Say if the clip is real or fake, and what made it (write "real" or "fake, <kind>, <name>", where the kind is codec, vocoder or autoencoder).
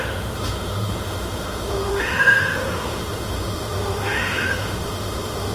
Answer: fake, autoencoder, DAC-VAE